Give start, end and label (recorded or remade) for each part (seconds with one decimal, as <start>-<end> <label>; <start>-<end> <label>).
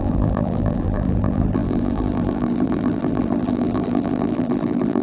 0.0-5.0 remade